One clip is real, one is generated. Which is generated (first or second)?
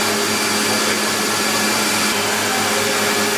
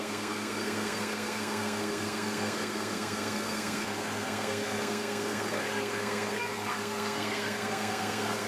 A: second